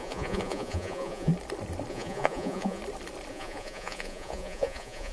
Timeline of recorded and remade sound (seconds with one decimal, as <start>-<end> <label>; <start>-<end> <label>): 0.0-1.3 remade; 1.3-1.9 recorded; 1.9-2.8 remade; 2.8-3.3 recorded; 3.3-5.1 remade